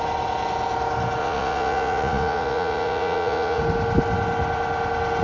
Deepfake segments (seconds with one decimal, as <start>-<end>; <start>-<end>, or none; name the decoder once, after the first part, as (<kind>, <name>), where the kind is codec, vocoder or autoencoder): 1.2-3.6 (vocoder, Vocos)